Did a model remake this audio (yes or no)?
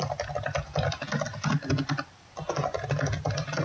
no